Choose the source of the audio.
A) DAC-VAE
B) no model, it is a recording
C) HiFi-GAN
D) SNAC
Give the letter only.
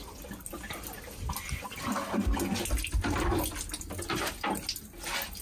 B